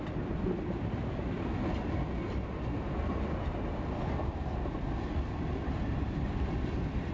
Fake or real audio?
real